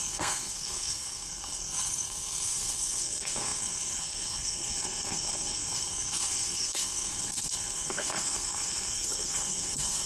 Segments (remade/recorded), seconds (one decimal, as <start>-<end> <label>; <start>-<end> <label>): 0.0-10.1 remade